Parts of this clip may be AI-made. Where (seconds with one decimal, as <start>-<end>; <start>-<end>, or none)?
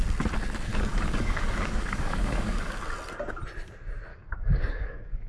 0.7-2.7; 4.1-5.3